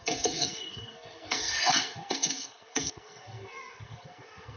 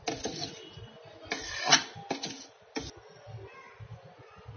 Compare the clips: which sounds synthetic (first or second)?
first